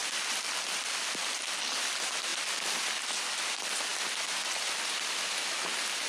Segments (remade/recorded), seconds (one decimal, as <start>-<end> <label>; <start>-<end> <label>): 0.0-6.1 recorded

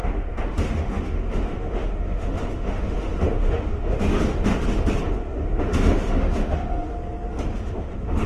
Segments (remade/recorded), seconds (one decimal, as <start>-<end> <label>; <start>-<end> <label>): 0.0-4.5 remade; 4.5-5.0 recorded; 5.0-6.9 remade; 6.9-7.6 recorded; 7.6-8.3 remade

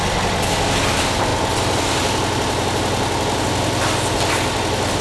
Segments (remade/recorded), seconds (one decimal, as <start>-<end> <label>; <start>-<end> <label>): 0.0-5.0 recorded